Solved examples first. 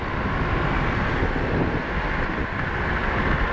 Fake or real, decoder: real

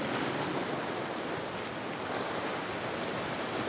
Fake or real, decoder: real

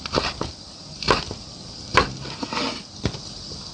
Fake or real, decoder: real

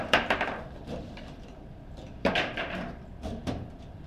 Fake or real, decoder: fake, vocoder, BigVGAN v2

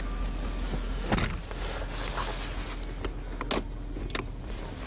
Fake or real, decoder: real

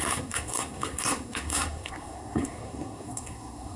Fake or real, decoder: fake, codec, SNAC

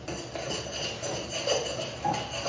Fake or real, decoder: real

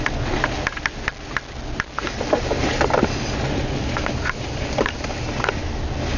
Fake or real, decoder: real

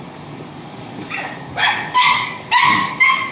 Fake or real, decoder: fake, codec, DAC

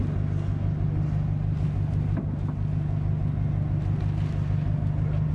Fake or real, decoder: real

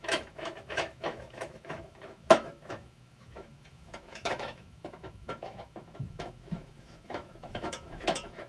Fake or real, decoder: fake, autoencoder, DAC-VAE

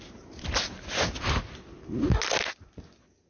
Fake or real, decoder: real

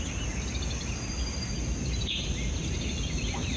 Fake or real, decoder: real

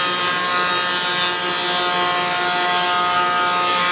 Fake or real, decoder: real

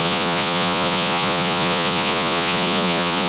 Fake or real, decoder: fake, vocoder, Vocos